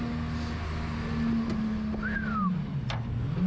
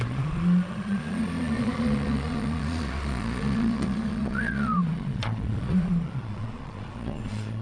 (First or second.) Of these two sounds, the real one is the first